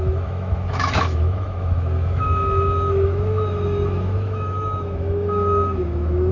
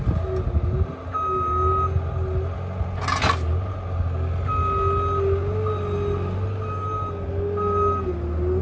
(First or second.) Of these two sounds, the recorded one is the second